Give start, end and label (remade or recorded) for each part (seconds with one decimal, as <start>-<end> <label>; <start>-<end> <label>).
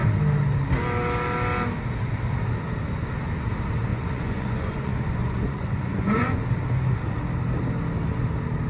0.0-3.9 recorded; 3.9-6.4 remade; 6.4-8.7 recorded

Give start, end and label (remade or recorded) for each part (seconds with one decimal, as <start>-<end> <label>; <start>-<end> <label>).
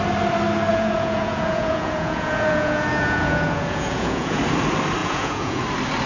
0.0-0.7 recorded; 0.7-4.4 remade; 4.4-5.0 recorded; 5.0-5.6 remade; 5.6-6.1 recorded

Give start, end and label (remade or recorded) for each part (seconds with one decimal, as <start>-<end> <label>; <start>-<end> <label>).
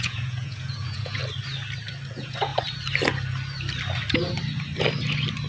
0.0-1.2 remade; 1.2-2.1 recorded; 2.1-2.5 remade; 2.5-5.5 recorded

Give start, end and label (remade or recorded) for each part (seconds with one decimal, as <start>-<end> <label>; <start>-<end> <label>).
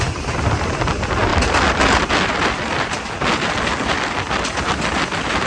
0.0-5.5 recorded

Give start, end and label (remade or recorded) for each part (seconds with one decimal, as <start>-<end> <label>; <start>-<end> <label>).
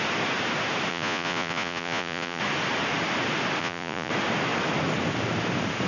0.0-0.9 recorded; 0.9-2.4 remade; 2.4-3.6 recorded; 3.6-4.1 remade; 4.1-5.9 recorded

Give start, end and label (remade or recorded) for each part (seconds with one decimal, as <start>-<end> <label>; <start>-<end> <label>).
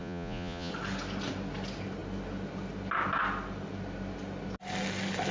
0.0-0.7 remade; 0.7-5.3 recorded